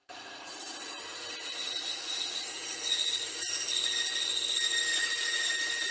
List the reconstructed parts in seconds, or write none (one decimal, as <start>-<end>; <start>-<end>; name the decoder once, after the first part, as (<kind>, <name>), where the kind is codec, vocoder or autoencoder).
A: 0.0-3.5 (vocoder, Vocos); 4.9-5.5

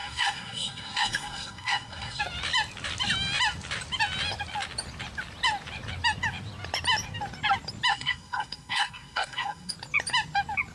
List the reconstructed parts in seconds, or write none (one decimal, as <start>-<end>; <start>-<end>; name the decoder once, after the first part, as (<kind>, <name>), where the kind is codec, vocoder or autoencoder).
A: 0.0-2.2 (codec, SNAC); 7.9-9.7

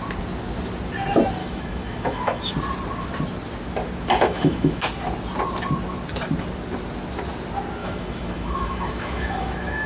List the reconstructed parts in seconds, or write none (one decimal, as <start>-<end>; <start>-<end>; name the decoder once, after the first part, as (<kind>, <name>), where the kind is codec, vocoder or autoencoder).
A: 1.4-2.5 (autoencoder, DAC-VAE); 4.3-4.8; 7.8-9.9

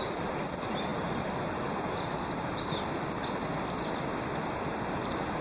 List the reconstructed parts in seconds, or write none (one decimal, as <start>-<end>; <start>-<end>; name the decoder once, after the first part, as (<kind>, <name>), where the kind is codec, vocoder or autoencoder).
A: none

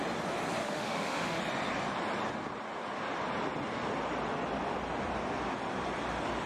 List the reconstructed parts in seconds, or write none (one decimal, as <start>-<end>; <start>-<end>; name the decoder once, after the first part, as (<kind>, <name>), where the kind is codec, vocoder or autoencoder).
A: 0.6-1.4 (autoencoder, DAC-VAE)

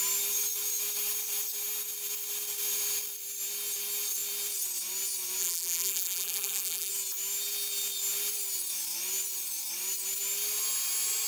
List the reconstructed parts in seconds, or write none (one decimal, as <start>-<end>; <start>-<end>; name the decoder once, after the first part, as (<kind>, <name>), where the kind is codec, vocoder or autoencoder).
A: 5.4-6.9 (vocoder, BigVGAN v2)

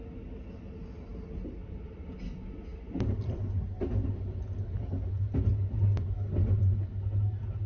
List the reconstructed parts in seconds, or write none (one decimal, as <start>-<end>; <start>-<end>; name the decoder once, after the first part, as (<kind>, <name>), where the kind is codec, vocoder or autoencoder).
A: 1.1-2.2 (vocoder, BigVGAN v2); 2.7-3.4